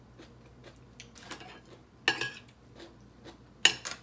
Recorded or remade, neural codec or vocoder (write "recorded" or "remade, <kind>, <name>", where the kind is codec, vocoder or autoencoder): recorded